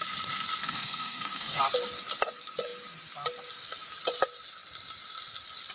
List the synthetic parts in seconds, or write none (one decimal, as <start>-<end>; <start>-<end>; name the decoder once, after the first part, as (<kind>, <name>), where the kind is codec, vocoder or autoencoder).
0.6-1.6 (codec, SNAC)